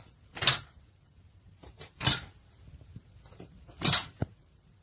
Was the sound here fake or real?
fake